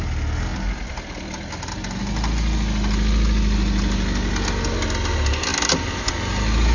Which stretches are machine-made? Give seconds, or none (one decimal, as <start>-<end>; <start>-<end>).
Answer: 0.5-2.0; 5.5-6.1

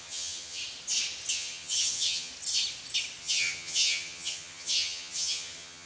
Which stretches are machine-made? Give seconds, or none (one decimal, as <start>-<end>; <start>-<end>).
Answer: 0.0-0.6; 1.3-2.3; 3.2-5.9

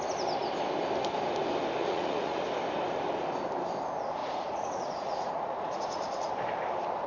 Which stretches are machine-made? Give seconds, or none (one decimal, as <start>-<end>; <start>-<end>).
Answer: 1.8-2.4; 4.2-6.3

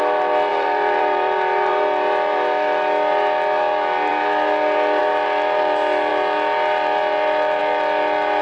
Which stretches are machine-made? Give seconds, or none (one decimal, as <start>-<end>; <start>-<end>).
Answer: 0.5-1.7

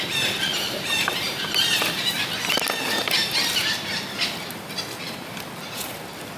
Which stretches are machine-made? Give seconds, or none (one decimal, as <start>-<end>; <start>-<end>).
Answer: 0.5-2.0

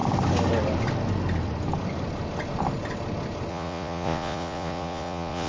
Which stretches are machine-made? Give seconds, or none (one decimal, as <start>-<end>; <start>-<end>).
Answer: 3.5-5.5

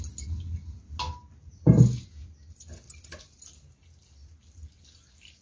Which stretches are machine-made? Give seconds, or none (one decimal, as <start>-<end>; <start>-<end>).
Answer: none

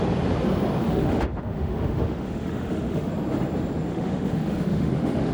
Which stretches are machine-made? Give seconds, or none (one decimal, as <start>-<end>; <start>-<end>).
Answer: 0.8-3.1; 3.9-5.3